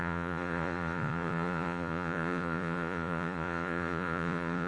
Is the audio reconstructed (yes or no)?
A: yes